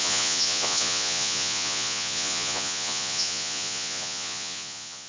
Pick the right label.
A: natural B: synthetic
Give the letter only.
B